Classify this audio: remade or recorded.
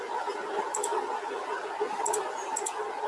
recorded